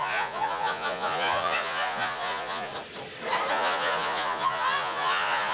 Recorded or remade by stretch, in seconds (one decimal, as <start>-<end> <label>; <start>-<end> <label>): 0.0-2.7 remade; 2.7-3.5 recorded; 3.5-5.5 remade